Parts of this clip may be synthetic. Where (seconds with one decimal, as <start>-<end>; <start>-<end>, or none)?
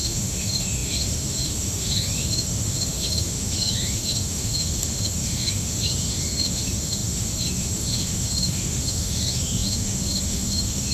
0.0-10.9